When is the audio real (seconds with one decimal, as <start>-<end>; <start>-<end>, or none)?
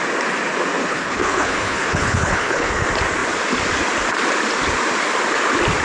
0.0-0.8; 2.7-5.8